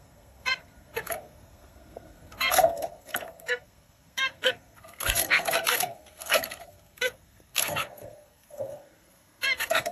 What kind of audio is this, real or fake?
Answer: fake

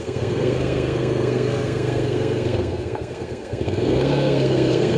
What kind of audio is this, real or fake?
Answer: fake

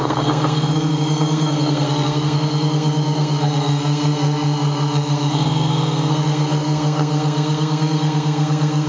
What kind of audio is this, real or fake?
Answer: fake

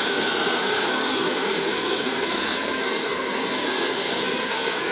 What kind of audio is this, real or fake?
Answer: fake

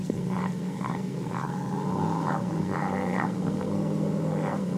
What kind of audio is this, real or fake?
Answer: fake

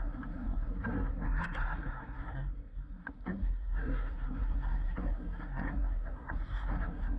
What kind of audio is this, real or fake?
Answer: fake